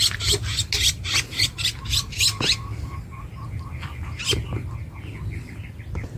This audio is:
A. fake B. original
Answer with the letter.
B